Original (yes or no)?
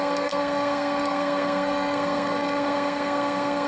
no